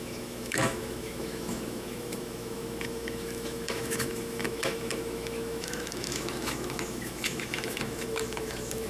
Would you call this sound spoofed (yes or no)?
yes